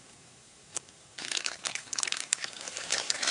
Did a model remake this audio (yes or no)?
yes